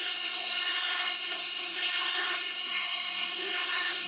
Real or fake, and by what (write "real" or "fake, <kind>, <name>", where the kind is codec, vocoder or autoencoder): fake, codec, SNAC